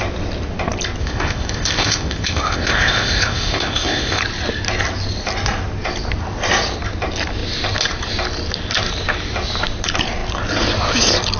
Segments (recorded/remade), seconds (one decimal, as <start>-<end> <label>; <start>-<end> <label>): 0.0-1.0 recorded; 1.0-4.2 remade; 4.2-11.4 recorded